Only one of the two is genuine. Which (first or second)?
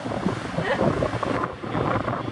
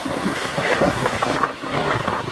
first